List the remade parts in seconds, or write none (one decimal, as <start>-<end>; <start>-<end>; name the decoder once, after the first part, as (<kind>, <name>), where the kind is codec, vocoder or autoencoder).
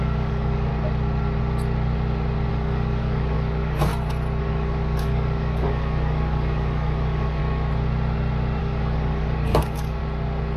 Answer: 0.0-0.7 (codec, DAC); 2.5-3.9; 4.4-7.4; 8.6-10.0